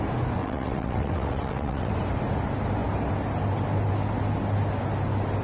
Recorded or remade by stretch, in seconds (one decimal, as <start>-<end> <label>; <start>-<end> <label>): 0.0-0.4 recorded; 0.4-1.9 remade; 1.9-5.4 recorded